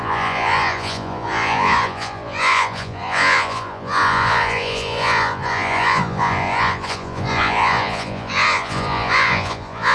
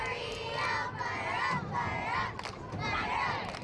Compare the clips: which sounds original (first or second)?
second